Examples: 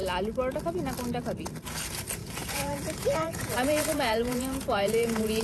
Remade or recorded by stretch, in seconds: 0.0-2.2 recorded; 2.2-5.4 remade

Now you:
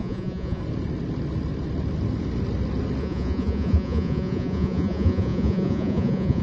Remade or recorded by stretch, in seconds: 0.0-0.6 remade; 0.6-3.0 recorded; 3.0-6.4 remade

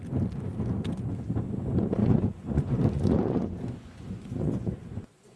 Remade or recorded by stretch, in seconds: 0.0-2.0 recorded; 2.0-5.4 remade

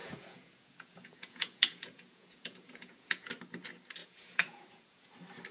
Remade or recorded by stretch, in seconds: 0.0-3.3 remade; 3.3-4.0 recorded; 4.0-5.1 remade; 5.1-5.5 recorded

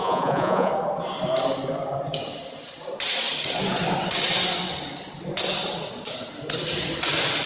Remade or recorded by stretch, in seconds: 0.0-0.7 remade; 0.7-7.5 recorded

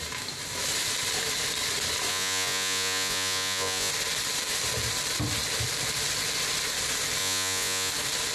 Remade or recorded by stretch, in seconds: 0.0-2.1 recorded; 2.1-3.9 remade; 3.9-7.2 recorded; 7.2-7.9 remade; 7.9-8.3 recorded